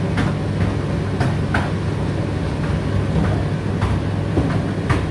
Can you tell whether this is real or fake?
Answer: real